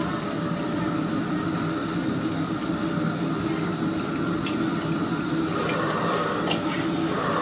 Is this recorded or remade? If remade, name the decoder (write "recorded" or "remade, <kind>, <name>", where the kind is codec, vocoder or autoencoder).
recorded